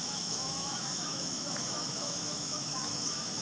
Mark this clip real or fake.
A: fake